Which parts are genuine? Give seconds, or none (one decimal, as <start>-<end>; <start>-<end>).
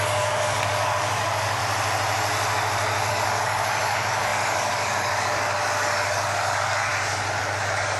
1.6-3.1; 6.9-7.4